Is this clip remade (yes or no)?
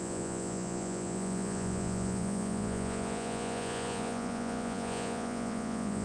yes